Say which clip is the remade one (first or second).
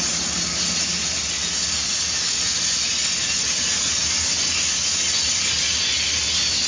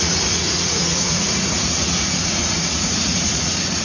second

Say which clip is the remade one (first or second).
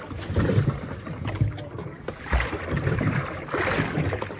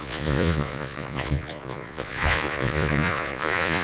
second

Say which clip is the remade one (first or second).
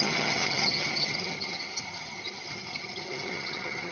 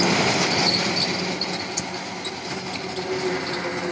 first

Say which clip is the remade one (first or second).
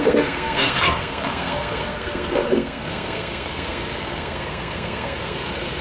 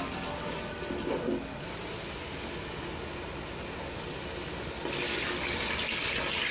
first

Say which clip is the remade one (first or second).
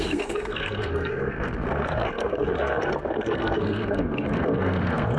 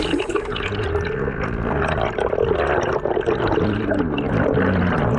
first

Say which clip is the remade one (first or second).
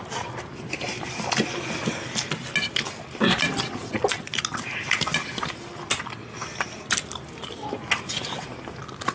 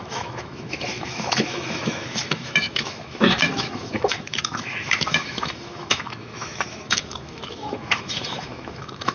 second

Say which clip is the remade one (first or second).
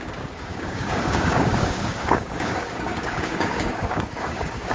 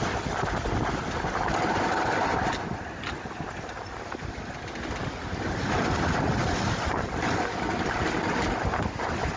first